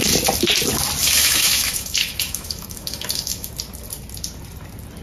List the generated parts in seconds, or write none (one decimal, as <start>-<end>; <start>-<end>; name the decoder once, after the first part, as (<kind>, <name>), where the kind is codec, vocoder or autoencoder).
1.0-3.5 (autoencoder, DAC-VAE)